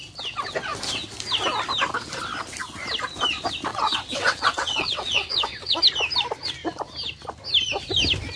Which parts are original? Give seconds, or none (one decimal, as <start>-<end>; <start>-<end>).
0.0-3.7; 5.8-8.4